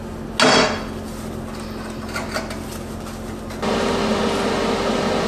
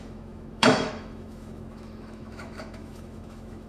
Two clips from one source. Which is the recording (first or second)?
first